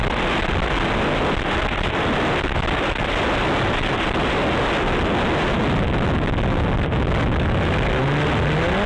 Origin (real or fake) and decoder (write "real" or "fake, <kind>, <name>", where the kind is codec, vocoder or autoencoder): real